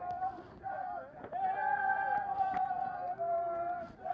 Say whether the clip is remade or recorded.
remade